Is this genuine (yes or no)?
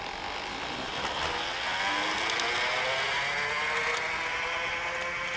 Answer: yes